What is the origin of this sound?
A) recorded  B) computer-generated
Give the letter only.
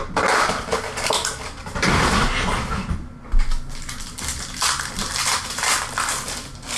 A